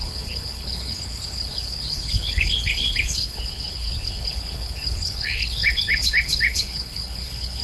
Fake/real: fake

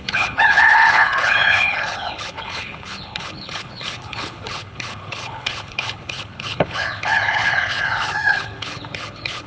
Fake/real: fake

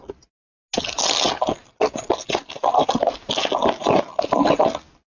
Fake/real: real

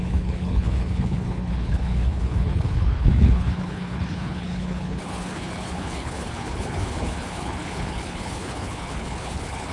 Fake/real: fake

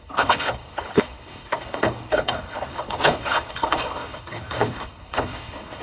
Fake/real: fake